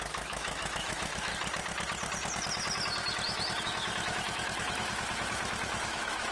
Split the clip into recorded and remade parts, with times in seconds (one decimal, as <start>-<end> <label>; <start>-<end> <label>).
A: 0.0-1.3 remade; 1.3-3.6 recorded; 3.6-6.3 remade